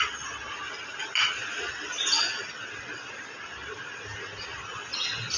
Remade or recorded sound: recorded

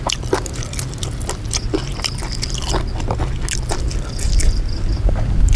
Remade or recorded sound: recorded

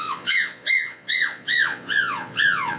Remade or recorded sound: remade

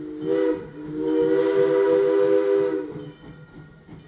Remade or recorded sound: recorded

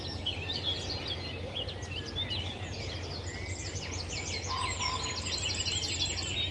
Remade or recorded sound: recorded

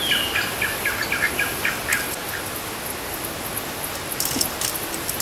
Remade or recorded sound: recorded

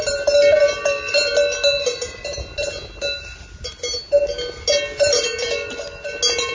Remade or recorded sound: recorded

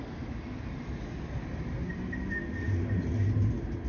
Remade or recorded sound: recorded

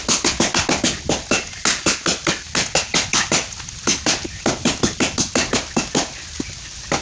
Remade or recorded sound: recorded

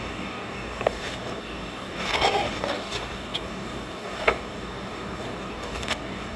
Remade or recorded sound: remade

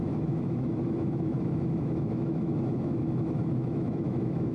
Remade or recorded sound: remade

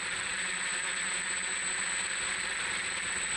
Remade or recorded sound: recorded